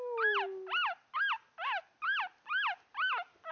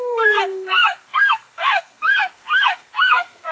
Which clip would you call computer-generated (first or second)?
second